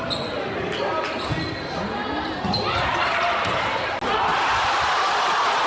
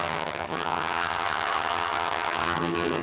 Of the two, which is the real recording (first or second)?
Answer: first